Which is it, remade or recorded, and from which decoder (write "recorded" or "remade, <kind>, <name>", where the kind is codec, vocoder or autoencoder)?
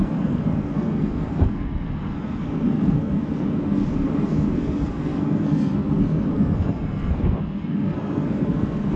remade, codec, SNAC